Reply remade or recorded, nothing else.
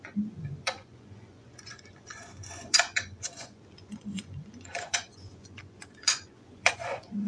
remade